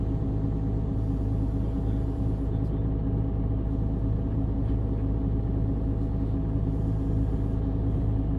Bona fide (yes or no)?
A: yes